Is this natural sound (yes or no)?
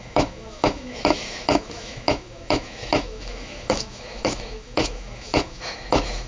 no